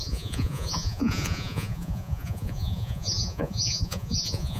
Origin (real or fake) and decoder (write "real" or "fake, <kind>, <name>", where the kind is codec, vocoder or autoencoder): fake, vocoder, Vocos